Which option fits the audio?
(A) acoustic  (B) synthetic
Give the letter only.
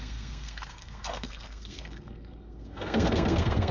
B